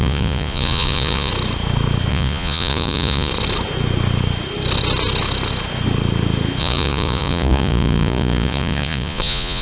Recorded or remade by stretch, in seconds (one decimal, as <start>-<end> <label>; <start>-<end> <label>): 0.0-1.3 remade; 1.3-2.1 recorded; 2.1-3.3 remade; 3.3-6.6 recorded; 6.6-9.6 remade